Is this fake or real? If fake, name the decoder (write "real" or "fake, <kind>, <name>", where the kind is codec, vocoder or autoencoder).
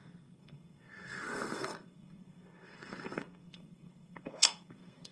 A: fake, codec, SNAC